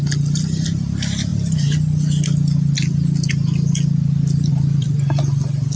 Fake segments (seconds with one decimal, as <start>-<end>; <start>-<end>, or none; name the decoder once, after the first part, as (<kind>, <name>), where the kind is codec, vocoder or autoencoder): none